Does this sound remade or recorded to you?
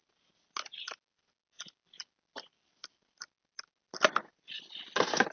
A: recorded